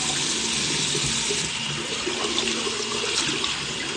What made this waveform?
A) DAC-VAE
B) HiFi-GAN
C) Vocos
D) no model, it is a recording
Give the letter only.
D